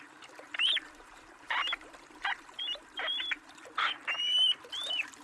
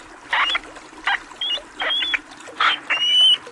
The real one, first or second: second